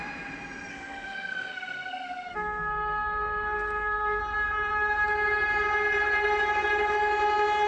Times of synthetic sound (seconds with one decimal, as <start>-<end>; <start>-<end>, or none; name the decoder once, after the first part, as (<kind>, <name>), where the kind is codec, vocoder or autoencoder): 0.7-4.2 (codec, SNAC)

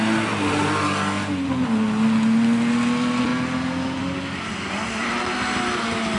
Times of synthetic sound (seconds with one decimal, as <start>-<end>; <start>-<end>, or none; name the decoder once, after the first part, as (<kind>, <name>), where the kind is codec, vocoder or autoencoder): none

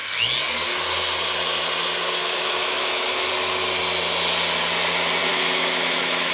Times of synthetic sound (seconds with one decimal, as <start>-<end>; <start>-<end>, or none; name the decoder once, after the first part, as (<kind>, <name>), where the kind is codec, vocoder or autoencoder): 2.2-3.3 (autoencoder, DAC-VAE); 5.3-6.3

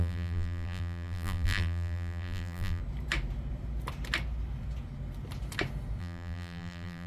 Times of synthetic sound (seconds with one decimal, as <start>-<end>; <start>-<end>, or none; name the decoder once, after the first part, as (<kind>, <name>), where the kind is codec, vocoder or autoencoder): 0.0-2.8 (vocoder, BigVGAN v2); 6.0-7.1